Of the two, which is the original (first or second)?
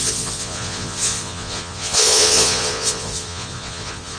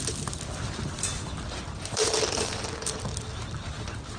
second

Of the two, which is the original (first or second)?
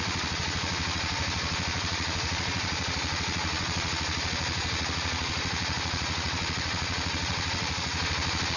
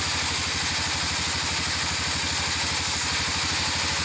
second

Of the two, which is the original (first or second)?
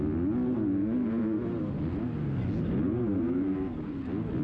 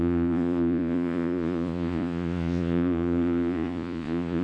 first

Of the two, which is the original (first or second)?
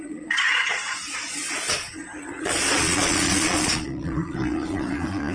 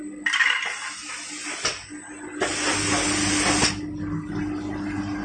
second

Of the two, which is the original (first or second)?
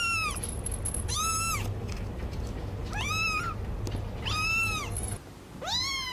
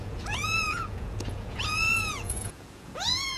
first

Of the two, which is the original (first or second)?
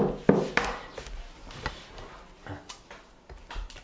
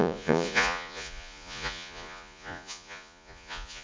first